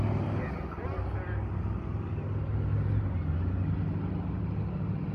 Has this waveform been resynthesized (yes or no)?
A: no